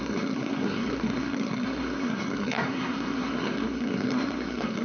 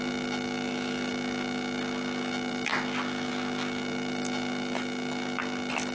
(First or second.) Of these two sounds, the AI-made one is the first